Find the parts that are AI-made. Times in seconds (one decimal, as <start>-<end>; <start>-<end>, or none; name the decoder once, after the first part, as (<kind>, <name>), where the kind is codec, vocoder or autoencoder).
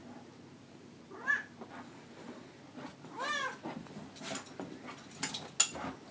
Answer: none